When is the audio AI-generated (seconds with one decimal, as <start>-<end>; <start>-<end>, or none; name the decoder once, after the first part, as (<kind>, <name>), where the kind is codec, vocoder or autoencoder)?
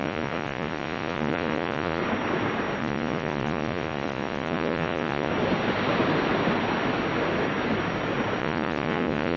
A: 0.0-2.0 (vocoder, Vocos); 2.8-5.3; 8.4-9.4